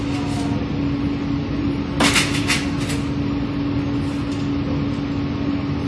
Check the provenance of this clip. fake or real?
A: real